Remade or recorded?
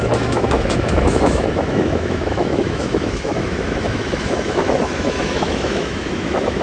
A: remade